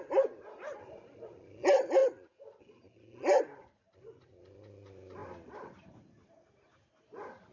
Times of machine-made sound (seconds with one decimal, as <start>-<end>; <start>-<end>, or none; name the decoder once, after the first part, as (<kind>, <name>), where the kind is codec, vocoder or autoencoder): none